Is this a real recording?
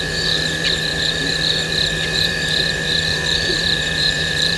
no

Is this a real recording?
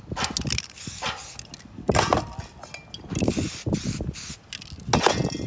yes